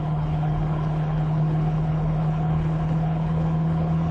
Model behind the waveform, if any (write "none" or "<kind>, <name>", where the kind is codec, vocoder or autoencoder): codec, HILCodec